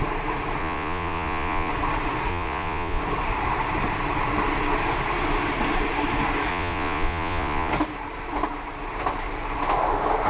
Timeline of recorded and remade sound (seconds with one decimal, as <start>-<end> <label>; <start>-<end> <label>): 0.0-0.6 recorded; 0.6-1.7 remade; 1.7-2.3 recorded; 2.3-3.0 remade; 3.0-6.5 recorded; 6.5-7.7 remade; 7.7-10.3 recorded